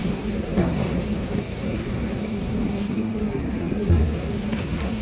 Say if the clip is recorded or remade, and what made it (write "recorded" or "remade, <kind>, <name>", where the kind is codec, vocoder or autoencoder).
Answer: remade, codec, SNAC